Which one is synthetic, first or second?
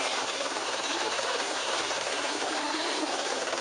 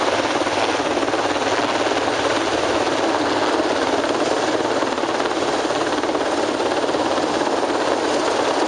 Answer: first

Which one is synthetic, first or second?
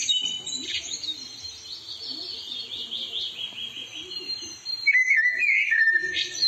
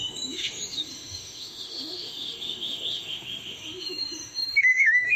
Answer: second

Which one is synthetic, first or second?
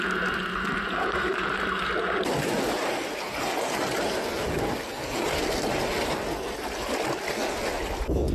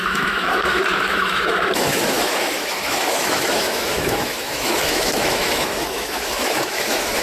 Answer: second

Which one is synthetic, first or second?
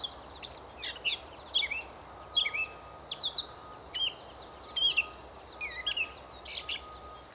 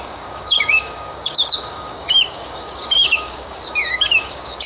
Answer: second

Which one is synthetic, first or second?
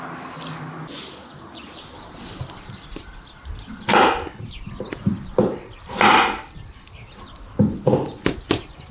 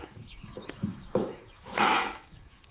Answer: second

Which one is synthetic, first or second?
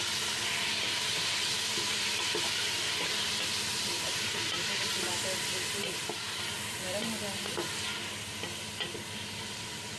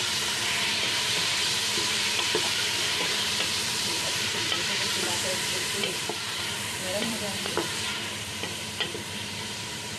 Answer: second